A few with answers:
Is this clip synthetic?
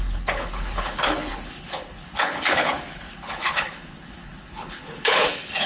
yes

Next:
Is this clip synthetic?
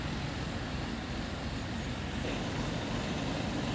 no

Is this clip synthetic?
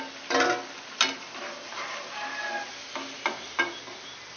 no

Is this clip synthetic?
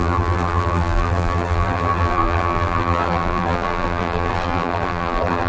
yes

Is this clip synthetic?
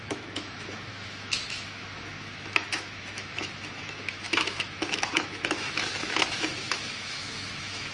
yes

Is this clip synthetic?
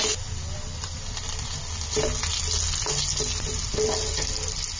no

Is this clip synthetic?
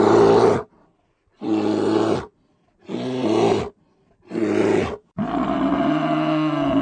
no